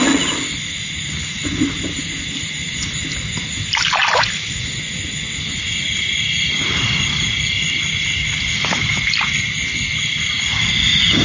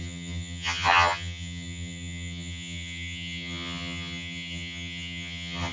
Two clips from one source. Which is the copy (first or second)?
second